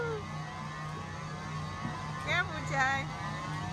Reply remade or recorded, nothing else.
recorded